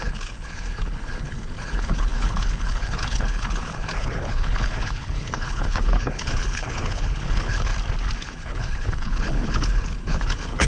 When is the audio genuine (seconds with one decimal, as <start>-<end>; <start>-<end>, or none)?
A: 7.7-8.2